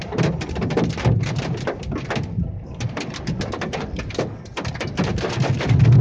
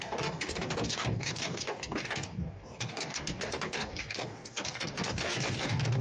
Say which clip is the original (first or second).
first